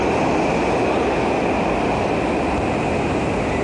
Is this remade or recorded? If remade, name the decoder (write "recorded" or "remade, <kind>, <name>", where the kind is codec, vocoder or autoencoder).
recorded